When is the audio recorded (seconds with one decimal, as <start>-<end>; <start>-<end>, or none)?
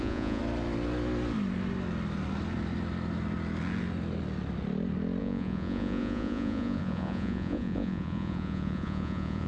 0.4-5.2